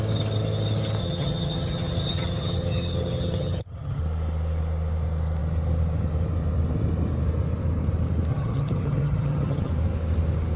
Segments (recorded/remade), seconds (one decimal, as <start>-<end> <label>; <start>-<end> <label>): 0.0-1.0 recorded; 1.0-4.0 remade; 4.0-8.3 recorded; 8.3-9.7 remade; 9.7-10.6 recorded